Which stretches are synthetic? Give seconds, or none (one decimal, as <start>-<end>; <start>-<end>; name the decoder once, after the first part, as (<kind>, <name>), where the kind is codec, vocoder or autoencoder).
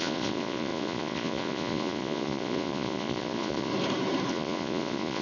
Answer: 0.0-3.7 (vocoder, Vocos); 4.3-5.2